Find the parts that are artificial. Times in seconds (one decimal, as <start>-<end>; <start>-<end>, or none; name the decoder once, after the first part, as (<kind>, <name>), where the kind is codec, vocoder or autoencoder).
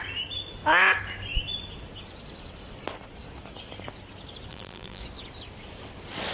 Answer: 4.5-5.0 (vocoder, BigVGAN v2)